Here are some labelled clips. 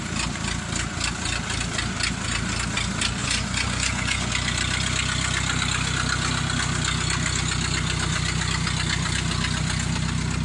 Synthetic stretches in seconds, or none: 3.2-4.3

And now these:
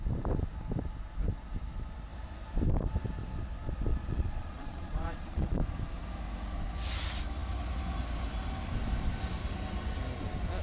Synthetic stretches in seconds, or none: 3.9-5.6